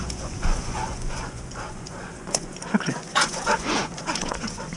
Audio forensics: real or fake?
fake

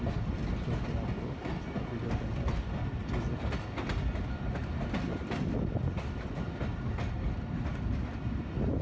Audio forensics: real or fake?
real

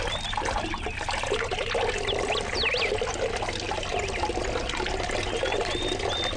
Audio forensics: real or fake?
real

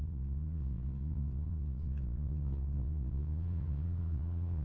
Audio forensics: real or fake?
fake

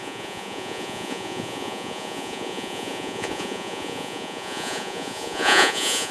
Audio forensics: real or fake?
fake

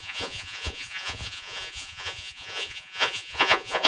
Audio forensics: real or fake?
fake